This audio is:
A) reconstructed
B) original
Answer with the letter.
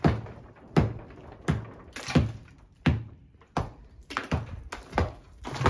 B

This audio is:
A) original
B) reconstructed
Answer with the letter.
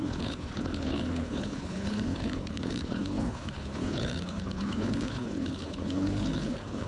B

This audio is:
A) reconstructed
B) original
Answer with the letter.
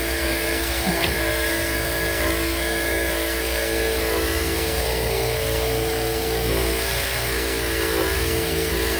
A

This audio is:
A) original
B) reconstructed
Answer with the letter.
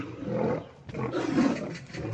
A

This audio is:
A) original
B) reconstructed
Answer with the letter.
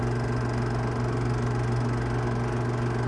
A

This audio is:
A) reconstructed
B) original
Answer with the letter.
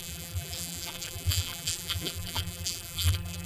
A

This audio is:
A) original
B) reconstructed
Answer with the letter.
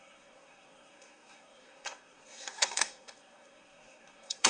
B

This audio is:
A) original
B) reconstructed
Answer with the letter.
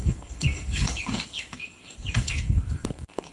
B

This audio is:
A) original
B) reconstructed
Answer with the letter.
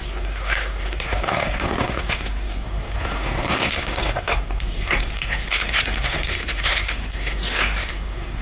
B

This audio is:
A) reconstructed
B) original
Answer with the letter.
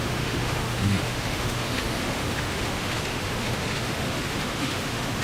A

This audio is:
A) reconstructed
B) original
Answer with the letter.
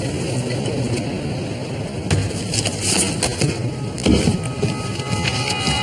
B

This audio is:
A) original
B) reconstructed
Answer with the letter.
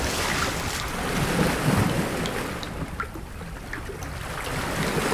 A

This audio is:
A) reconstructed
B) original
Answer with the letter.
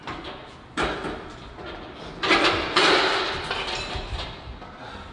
B